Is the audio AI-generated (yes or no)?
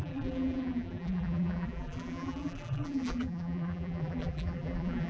yes